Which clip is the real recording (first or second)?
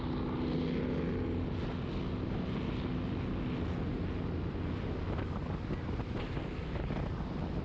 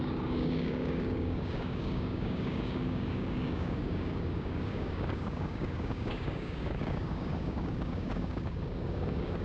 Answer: first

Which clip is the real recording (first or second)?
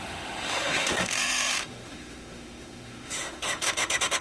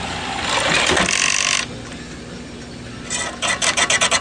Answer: second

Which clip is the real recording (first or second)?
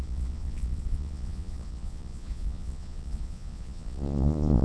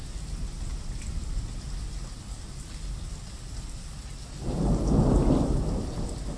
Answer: second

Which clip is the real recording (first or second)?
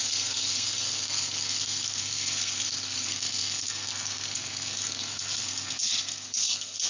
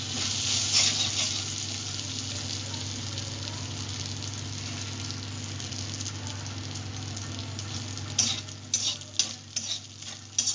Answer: second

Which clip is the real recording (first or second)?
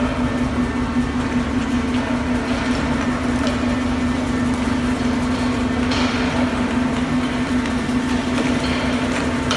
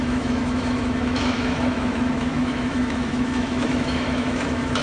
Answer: first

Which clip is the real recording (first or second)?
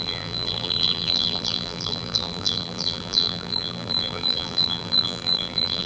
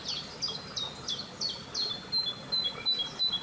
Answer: second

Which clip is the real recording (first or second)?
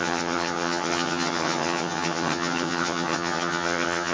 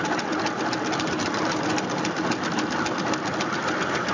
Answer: second